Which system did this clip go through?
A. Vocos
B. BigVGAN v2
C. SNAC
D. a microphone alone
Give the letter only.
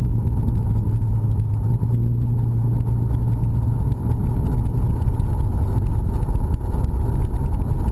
D